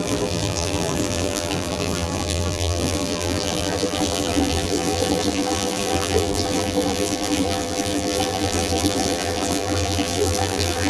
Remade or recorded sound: remade